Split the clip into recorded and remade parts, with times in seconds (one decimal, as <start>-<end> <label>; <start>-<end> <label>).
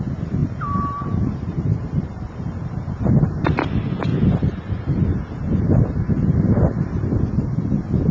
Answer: 0.0-0.4 recorded; 0.4-3.0 remade; 3.0-4.1 recorded; 4.1-5.0 remade; 5.0-8.1 recorded